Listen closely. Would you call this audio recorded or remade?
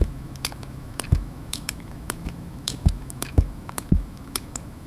remade